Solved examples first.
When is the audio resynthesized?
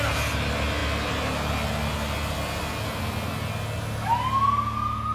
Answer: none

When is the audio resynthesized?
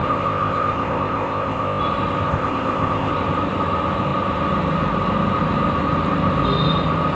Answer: 0.0-1.8 (codec, ZipCodec); 2.3-3.1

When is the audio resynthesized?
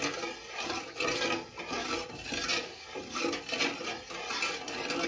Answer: none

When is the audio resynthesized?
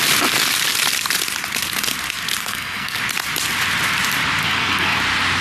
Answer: 2.4-3.0 (codec, SNAC); 4.4-5.0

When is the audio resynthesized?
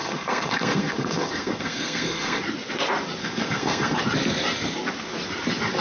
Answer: 0.0-2.4 (codec, SNAC); 3.2-4.0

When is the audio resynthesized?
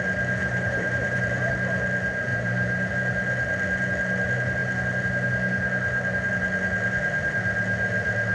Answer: 0.4-1.5 (vocoder, BigVGAN v2); 2.3-2.9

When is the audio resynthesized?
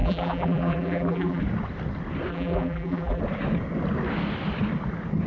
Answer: 0.0-1.4 (vocoder, BigVGAN v2); 2.3-3.2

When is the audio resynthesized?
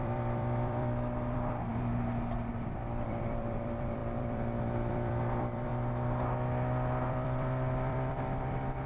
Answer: 0.0-1.7 (vocoder, BigVGAN v2); 2.5-5.7; 7.1-8.9